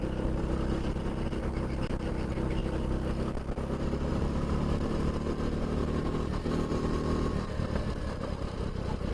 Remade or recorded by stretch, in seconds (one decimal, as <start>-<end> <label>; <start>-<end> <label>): 0.0-2.6 remade; 2.6-4.1 recorded; 4.1-9.1 remade